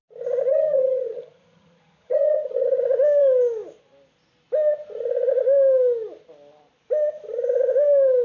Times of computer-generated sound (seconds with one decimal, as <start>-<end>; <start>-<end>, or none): 0.5-2.8